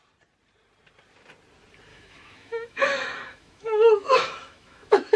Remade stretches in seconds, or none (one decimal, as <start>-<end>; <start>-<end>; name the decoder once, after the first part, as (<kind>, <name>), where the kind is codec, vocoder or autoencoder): 1.9-5.2 (autoencoder, DAC-VAE)